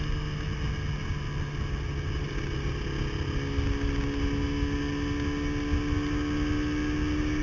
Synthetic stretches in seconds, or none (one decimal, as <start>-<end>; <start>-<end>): none